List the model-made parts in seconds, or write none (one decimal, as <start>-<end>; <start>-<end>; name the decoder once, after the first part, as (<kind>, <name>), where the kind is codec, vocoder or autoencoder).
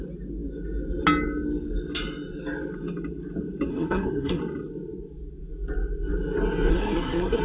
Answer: 3.7-4.4 (codec, SNAC); 6.7-7.4